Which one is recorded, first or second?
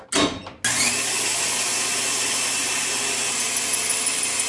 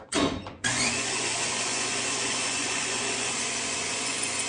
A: first